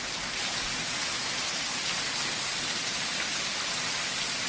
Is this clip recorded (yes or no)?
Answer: yes